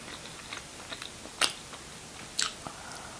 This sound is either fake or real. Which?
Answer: real